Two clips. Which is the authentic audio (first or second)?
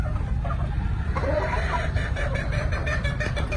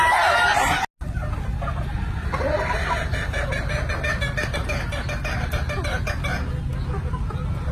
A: second